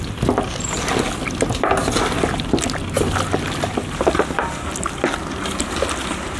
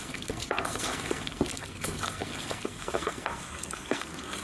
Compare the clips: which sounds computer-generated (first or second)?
second